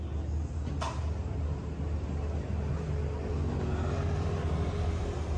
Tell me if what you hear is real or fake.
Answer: real